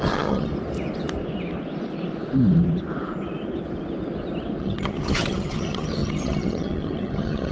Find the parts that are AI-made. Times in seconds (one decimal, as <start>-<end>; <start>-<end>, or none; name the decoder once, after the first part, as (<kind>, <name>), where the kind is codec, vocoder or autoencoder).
0.0-0.5 (vocoder, HiFi-GAN); 4.6-7.5

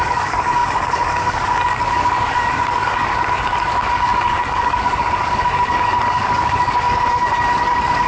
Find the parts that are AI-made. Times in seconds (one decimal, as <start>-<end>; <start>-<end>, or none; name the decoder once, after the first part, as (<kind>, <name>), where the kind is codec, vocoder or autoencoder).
0.0-8.1 (codec, DAC)

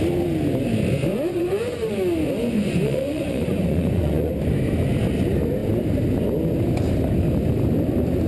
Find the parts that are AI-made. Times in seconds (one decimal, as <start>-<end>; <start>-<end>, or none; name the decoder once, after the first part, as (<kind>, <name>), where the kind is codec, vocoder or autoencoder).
1.1-1.9 (vocoder, Vocos); 2.4-4.3

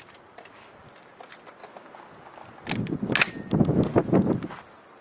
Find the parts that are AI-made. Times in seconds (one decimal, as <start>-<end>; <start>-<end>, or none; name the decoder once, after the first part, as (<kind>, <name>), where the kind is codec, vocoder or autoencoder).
none

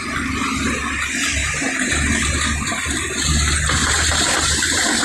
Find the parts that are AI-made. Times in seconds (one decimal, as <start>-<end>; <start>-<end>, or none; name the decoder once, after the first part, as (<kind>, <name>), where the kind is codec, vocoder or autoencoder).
1.4-1.9 (vocoder, BigVGAN v2); 3.8-5.0